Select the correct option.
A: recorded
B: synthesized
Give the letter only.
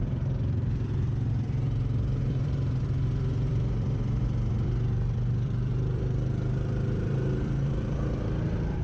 B